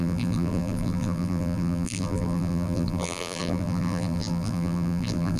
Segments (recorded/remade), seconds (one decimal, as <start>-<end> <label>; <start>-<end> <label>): 0.0-5.4 remade